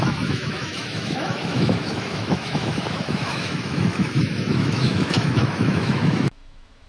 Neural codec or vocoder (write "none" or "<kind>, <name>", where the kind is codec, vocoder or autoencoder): autoencoder, DAC-VAE